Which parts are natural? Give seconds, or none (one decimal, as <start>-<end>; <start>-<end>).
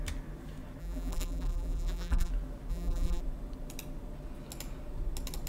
0.0-0.8; 2.3-2.7; 3.2-5.5